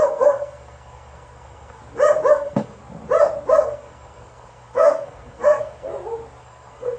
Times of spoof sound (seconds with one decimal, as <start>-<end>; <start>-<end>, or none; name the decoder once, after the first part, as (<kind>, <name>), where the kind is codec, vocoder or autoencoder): 0.0-1.8 (codec, SNAC); 2.3-2.8; 3.5-5.9; 6.4-7.0